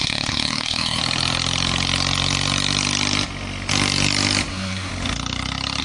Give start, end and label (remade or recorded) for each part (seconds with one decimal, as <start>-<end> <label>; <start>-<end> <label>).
0.0-1.0 remade; 1.0-4.5 recorded; 4.5-4.9 remade; 4.9-5.8 recorded